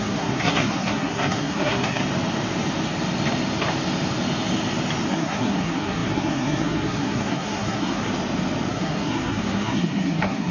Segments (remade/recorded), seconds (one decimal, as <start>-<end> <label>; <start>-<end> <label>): 0.0-2.0 remade; 2.0-5.1 recorded; 5.1-8.1 remade; 8.1-8.7 recorded; 8.7-10.5 remade